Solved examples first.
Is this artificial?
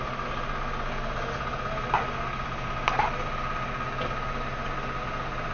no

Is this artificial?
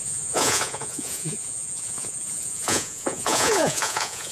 yes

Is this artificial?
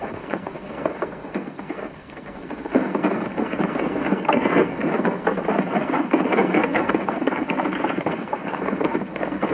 yes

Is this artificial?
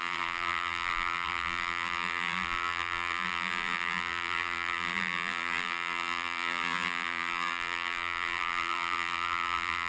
yes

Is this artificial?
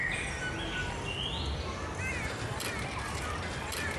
no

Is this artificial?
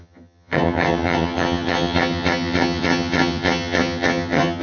yes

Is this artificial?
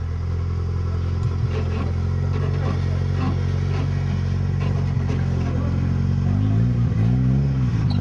no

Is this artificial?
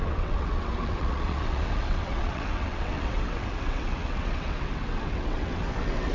yes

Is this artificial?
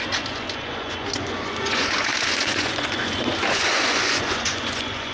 yes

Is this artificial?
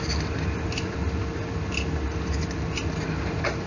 no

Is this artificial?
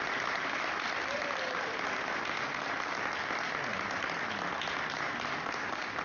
no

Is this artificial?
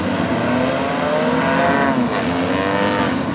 no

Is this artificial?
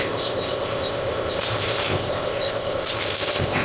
yes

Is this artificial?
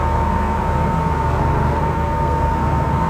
yes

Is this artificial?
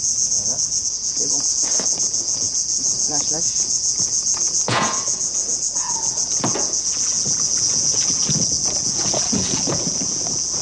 yes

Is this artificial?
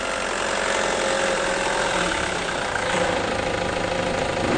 yes